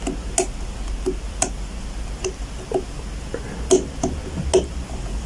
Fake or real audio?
real